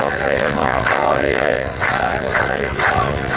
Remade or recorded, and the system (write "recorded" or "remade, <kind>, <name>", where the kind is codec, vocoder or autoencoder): remade, vocoder, WaveNeXt